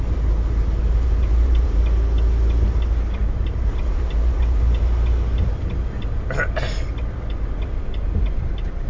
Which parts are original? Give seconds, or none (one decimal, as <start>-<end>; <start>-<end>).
0.0-0.6; 1.8-3.2; 4.8-8.9